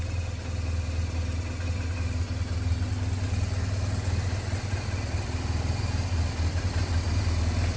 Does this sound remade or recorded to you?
recorded